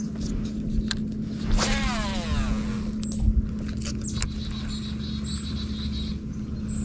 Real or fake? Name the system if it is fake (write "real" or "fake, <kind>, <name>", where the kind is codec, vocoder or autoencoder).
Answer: real